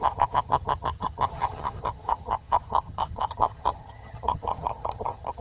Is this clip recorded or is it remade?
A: remade